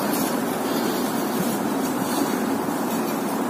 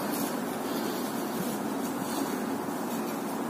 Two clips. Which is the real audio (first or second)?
second